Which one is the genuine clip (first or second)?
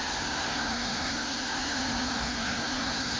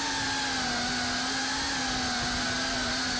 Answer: second